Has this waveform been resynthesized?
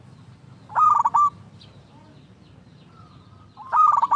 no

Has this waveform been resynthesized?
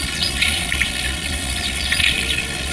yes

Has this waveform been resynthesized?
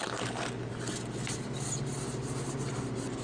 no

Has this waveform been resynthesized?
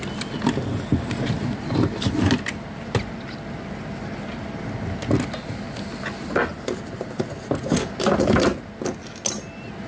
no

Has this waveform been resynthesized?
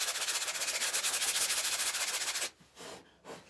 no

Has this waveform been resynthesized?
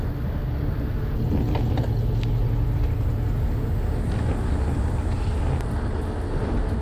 no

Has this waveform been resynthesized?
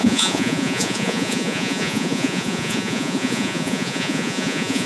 yes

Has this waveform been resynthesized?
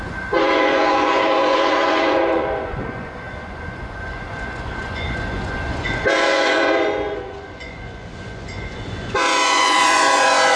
yes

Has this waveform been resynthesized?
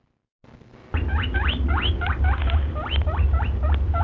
no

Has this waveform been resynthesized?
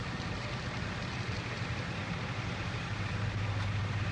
no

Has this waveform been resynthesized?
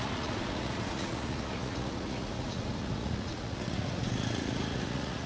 yes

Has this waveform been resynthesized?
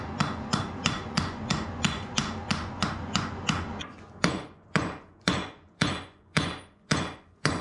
yes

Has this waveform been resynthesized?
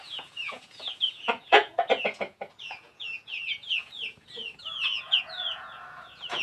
yes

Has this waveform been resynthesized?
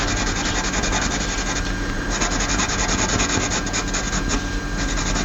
no